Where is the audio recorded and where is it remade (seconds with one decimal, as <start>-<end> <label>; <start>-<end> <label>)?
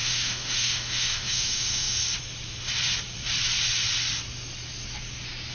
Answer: 0.0-2.0 remade; 2.0-5.5 recorded